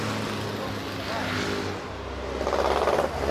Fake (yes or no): no